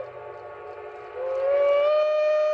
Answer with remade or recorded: recorded